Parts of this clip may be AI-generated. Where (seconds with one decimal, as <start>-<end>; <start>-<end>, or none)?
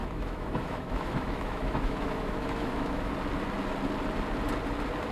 0.0-3.1